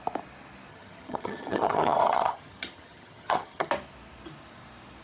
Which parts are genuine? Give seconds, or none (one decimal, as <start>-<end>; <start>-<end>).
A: 0.0-0.7; 3.7-5.0